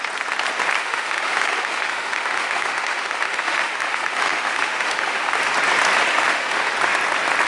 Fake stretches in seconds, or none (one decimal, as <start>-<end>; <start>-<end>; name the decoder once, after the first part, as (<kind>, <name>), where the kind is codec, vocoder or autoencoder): 0.8-5.3 (autoencoder, DAC-VAE); 6.1-6.7